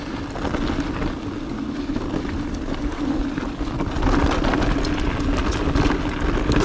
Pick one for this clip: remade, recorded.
recorded